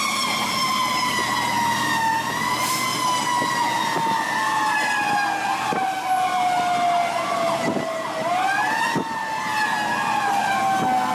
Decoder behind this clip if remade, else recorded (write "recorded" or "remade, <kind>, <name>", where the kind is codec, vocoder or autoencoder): recorded